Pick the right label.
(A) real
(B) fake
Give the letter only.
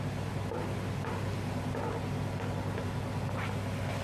A